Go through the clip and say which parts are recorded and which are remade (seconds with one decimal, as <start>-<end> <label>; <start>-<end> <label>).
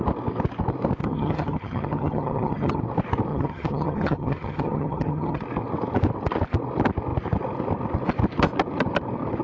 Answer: 0.0-1.0 recorded; 1.0-2.8 remade; 2.8-3.3 recorded; 3.3-5.4 remade; 5.4-9.4 recorded